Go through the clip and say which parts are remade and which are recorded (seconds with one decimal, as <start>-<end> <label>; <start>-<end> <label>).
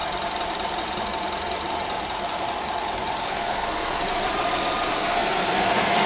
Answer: 0.0-3.2 recorded; 3.2-4.0 remade; 4.0-4.9 recorded; 4.9-6.1 remade